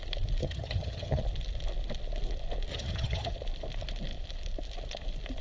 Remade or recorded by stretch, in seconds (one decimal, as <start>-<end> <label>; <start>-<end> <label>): 0.0-0.4 recorded; 0.4-1.2 remade; 1.2-2.7 recorded; 2.7-3.3 remade; 3.3-5.4 recorded